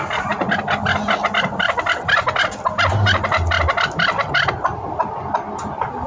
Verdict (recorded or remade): recorded